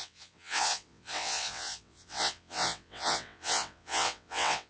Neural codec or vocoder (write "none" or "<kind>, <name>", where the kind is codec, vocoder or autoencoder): vocoder, WaveNeXt